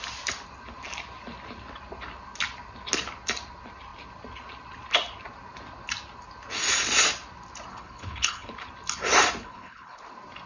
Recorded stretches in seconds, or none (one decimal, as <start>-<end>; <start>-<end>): 0.0-7.7; 8.5-9.4; 10.0-10.5